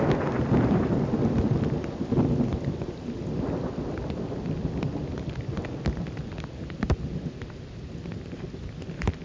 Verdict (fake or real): real